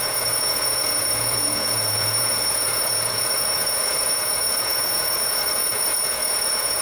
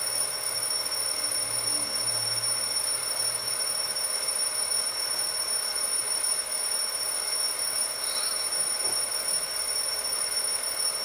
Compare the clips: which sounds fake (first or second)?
first